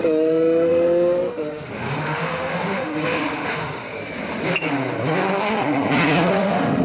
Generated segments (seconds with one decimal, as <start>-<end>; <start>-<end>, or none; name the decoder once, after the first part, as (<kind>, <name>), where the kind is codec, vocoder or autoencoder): 0.0-4.0 (autoencoder, DAC-VAE); 6.3-6.8